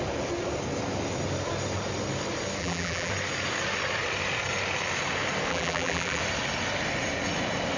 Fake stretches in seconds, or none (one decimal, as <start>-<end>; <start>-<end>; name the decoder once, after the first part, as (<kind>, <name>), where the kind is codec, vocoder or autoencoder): 2.6-3.1 (vocoder, BigVGAN v2); 5.5-6.2